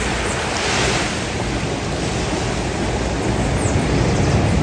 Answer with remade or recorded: recorded